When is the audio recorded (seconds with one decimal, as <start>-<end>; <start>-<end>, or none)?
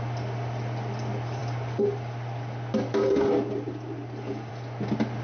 0.0-5.2